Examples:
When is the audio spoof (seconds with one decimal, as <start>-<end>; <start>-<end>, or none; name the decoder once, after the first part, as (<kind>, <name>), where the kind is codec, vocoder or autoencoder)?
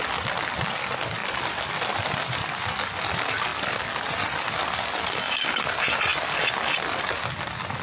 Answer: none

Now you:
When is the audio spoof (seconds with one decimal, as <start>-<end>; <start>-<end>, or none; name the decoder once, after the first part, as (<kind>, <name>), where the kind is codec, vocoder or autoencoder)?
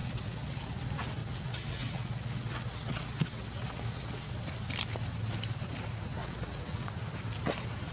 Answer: 0.0-0.7 (vocoder, WaveNeXt); 1.2-4.3; 6.2-6.9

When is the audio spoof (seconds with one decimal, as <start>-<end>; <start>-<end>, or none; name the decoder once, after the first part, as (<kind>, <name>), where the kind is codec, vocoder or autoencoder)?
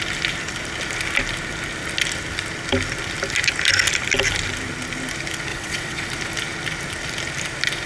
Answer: 5.5-6.1 (vocoder, WaveNeXt)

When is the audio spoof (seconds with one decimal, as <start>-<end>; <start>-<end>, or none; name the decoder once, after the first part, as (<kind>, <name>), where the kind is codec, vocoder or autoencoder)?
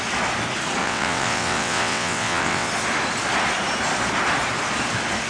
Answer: 0.8-2.7 (vocoder, WaveNeXt)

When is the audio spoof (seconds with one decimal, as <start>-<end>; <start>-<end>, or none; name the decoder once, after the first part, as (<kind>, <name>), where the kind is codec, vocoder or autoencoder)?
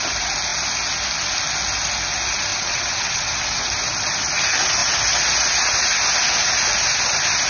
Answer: 2.5-3.6 (vocoder, WaveNeXt)